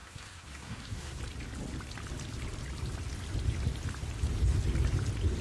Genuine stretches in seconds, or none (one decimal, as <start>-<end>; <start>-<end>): 1.2-5.4